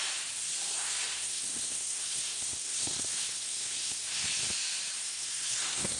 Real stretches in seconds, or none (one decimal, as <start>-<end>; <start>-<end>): 0.0-0.7; 4.3-5.0